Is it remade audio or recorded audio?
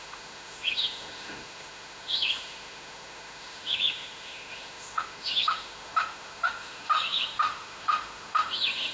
remade